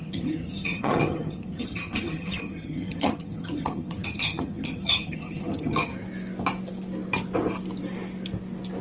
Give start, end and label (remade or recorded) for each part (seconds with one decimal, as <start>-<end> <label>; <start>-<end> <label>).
0.0-5.9 remade; 5.9-8.8 recorded